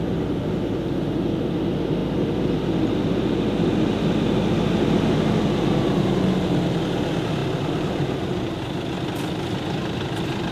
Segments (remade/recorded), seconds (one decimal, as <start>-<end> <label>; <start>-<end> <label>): 0.0-7.4 recorded; 7.4-8.5 remade; 8.5-10.5 recorded